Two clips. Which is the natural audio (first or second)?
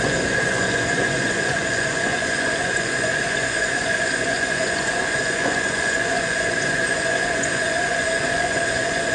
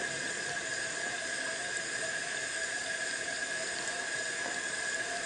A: second